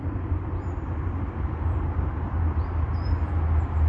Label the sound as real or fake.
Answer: fake